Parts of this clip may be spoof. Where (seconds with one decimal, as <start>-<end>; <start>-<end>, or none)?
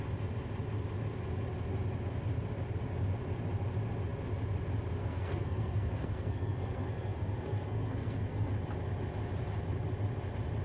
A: 5.0-8.5